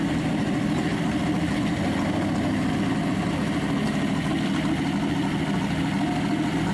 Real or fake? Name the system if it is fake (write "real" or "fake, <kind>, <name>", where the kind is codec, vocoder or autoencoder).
real